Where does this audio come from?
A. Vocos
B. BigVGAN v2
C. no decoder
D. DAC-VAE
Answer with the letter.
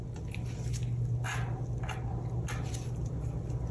C